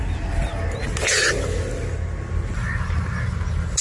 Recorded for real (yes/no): yes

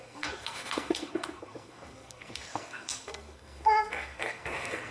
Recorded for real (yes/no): no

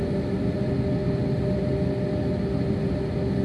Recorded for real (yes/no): yes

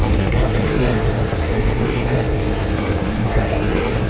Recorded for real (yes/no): no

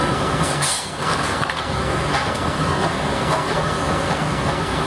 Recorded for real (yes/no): no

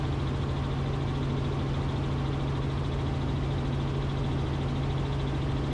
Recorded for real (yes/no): yes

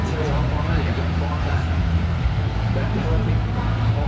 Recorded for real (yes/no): yes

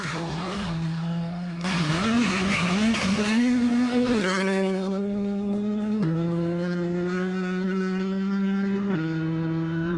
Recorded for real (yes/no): no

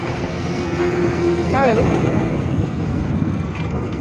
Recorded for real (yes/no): no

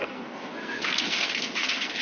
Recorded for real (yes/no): no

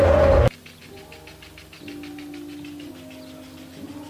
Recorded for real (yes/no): yes